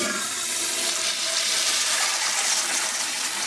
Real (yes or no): yes